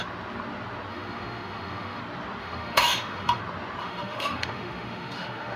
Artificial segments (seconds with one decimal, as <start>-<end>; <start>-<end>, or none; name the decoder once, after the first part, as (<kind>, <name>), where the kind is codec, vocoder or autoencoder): 0.9-2.0 (autoencoder, DAC-VAE); 2.4-3.4; 3.8-5.6